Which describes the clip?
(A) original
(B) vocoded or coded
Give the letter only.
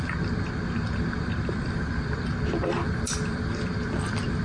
B